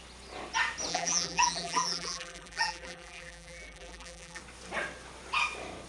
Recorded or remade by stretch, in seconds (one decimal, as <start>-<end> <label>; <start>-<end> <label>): 0.0-0.9 recorded; 0.9-4.4 remade; 4.4-5.9 recorded

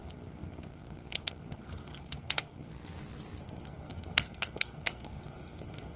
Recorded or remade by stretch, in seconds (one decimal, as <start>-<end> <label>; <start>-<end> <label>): 0.0-2.7 remade; 2.7-3.4 recorded; 3.4-6.0 remade

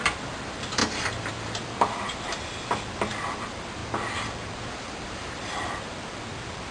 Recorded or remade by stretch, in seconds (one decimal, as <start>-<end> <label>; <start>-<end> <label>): 0.0-3.8 remade; 3.8-4.7 recorded; 4.7-6.7 remade

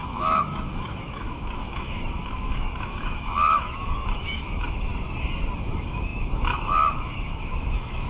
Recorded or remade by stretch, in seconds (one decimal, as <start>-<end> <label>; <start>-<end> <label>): 0.0-4.9 remade; 4.9-5.6 recorded; 5.6-8.1 remade

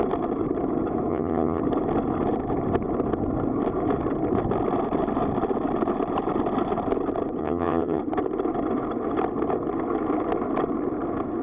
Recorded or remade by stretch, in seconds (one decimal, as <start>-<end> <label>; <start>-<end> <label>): 0.0-1.1 recorded; 1.1-1.6 remade; 1.6-7.4 recorded; 7.4-8.0 remade; 8.0-11.4 recorded

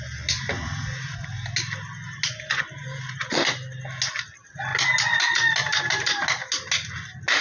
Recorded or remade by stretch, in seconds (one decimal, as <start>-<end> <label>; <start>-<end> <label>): 0.0-7.4 recorded